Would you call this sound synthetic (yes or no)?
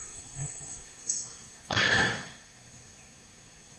yes